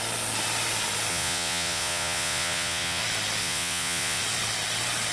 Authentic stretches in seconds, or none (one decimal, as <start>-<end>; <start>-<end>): 0.0-1.1; 3.0-3.4; 4.2-5.1